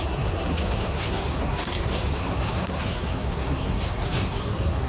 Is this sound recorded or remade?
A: remade